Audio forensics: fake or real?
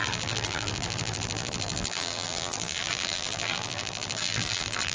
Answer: fake